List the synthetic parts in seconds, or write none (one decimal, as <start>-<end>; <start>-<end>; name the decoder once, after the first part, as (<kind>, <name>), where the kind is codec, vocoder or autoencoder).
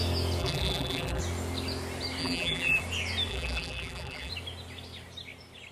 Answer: 0.4-1.2 (vocoder, BigVGAN v2); 2.2-2.8; 3.3-4.3